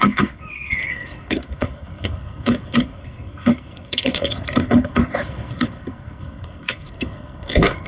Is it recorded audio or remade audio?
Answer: remade